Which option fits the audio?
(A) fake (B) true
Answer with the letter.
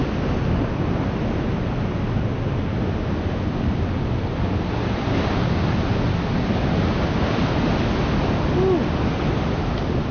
B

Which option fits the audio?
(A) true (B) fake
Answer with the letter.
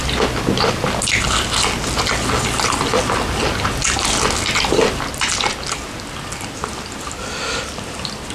A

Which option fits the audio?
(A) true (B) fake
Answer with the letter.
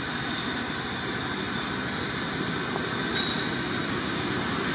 A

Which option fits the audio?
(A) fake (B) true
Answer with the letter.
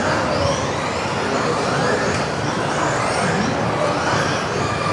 B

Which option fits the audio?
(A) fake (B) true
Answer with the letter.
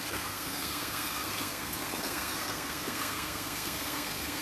A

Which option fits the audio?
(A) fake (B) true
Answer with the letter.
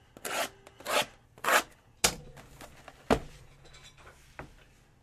B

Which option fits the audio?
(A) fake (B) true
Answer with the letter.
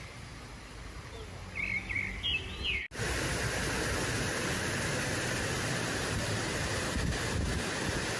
B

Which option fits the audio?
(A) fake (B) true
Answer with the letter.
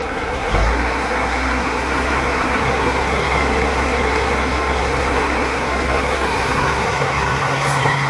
A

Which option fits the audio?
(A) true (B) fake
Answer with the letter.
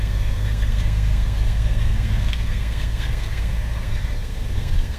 B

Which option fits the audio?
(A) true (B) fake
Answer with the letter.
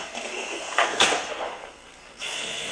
B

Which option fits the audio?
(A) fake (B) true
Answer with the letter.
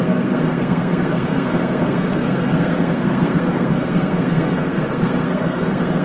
A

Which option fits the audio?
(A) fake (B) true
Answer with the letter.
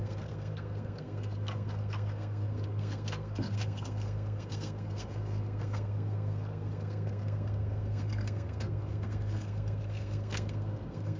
A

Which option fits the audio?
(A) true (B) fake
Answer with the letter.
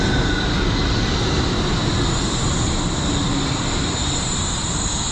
A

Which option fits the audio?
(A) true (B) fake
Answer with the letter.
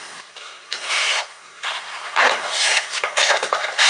B